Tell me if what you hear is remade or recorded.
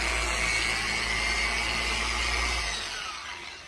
recorded